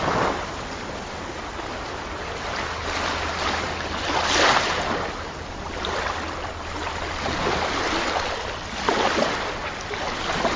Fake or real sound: real